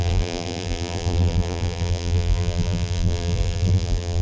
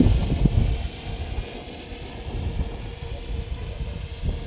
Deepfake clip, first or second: first